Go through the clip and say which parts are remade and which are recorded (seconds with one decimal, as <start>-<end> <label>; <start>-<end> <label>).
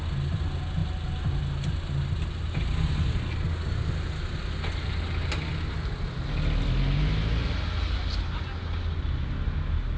0.0-10.0 recorded